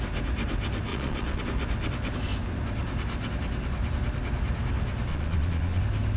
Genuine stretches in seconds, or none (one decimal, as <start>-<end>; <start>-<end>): 0.0-0.9; 1.4-5.1; 5.8-6.2